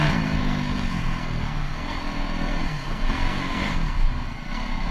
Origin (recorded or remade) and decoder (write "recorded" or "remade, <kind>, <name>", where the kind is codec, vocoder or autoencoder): remade, codec, SNAC